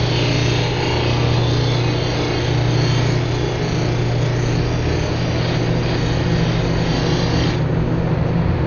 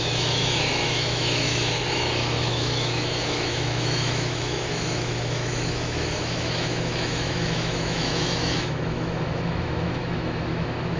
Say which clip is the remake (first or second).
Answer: second